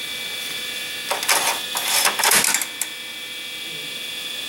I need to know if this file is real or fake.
real